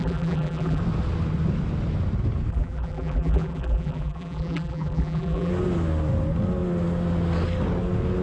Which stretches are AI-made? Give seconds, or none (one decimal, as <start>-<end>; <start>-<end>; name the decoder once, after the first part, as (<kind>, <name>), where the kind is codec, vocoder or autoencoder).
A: 0.0-0.8 (vocoder, BigVGAN v2); 2.5-5.5

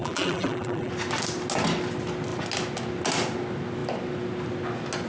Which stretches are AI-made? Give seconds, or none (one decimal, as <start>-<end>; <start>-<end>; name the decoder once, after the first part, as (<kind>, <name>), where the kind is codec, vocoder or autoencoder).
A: 0.0-0.9 (vocoder, BigVGAN v2)

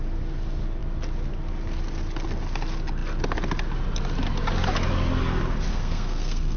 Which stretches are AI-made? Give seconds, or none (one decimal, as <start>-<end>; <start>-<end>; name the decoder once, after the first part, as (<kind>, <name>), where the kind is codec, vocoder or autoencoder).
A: 5.7-6.6 (codec, SNAC)

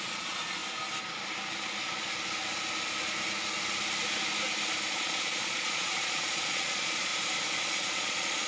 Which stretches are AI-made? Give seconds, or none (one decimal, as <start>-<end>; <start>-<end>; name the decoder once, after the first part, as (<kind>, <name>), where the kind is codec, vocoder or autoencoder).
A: 0.0-0.6 (vocoder, Vocos); 4.9-7.1; 7.6-8.5